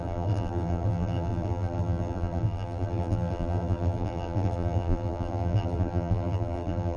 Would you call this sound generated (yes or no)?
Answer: yes